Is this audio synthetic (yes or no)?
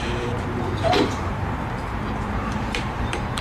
yes